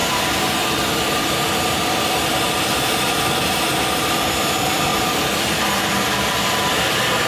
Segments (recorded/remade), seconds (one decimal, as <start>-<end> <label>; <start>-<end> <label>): 0.0-2.0 remade; 2.0-4.9 recorded; 4.9-5.6 remade; 5.6-7.3 recorded